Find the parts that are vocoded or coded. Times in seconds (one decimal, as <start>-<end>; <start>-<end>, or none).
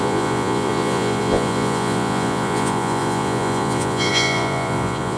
0.0-5.2